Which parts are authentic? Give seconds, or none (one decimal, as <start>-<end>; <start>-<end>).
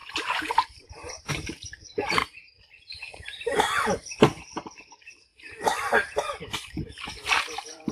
2.2-2.9